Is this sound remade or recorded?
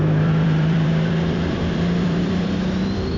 remade